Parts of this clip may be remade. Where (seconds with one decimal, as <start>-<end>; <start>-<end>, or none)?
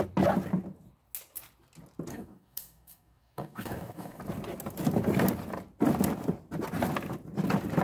2.1-4.2